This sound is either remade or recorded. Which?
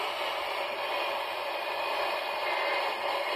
recorded